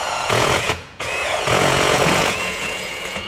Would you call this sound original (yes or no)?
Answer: no